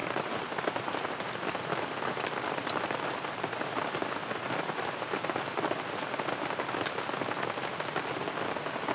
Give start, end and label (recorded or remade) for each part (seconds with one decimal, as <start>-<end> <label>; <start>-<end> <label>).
0.0-1.5 remade; 1.5-4.2 recorded; 4.2-5.3 remade; 5.3-8.9 recorded